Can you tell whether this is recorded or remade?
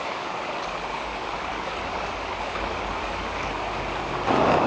remade